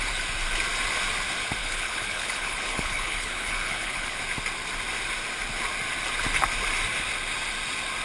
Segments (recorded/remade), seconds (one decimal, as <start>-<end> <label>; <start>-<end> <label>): 0.0-1.6 recorded; 1.6-4.2 remade; 4.2-8.0 recorded